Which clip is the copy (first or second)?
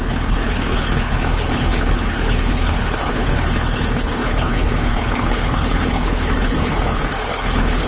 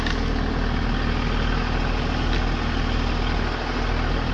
first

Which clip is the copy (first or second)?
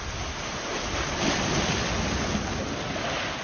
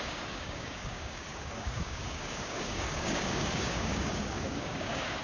second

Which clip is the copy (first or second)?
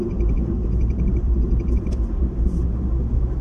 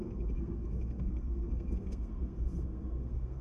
second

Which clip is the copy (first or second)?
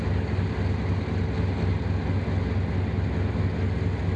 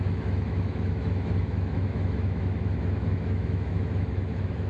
second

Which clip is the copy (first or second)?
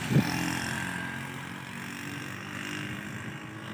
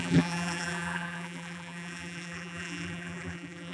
second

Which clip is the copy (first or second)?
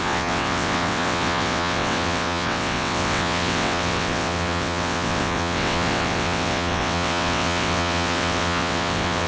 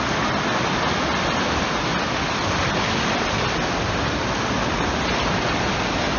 first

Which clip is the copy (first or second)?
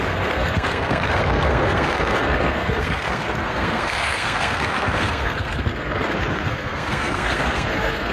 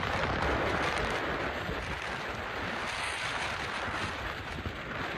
first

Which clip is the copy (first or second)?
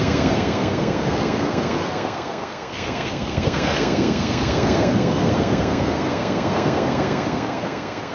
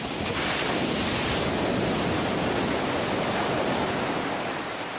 first